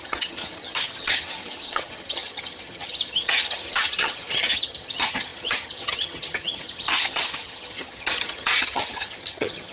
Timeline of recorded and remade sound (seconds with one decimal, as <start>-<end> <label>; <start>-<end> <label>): 0.0-9.7 remade